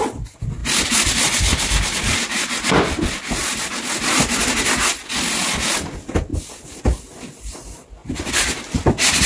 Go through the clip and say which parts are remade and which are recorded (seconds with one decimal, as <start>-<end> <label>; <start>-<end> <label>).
0.0-9.3 recorded